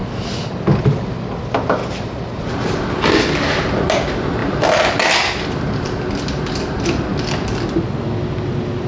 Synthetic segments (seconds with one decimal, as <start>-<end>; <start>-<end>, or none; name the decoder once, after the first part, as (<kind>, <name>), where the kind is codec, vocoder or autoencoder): 1.8-2.7 (vocoder, BigVGAN v2); 4.4-5.1